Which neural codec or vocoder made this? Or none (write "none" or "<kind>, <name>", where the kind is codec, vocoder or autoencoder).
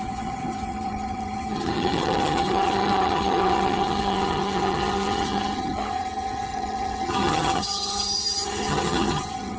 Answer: vocoder, HiFi-GAN